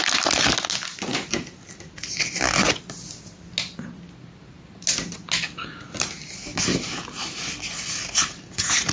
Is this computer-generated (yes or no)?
no